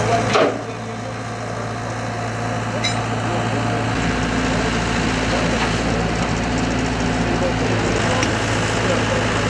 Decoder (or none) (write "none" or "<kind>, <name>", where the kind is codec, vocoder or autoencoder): none